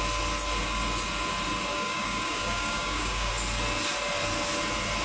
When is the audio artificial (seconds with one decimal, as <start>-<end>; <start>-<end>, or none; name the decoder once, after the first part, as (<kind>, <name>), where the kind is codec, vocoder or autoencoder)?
1.7-3.3 (codec, DAC)